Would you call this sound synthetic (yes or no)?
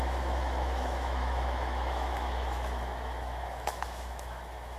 yes